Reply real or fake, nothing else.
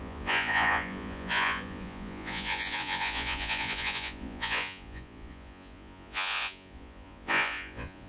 fake